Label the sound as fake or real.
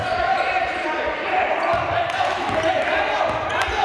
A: fake